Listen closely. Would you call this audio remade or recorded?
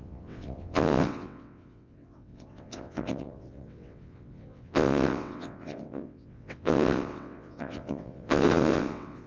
remade